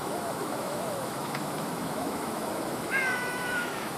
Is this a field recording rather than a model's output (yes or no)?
no